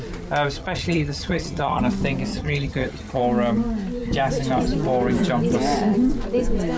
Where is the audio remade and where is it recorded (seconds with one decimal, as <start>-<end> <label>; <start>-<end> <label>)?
0.0-0.6 recorded; 0.6-1.8 remade; 1.8-2.3 recorded; 2.3-3.2 remade; 3.2-6.8 recorded